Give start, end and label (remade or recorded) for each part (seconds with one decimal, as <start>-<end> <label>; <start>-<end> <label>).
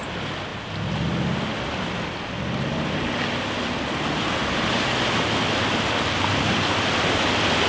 0.0-7.7 recorded